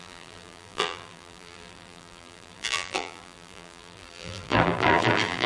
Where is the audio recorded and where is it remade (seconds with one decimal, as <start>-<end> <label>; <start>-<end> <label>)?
0.0-5.5 remade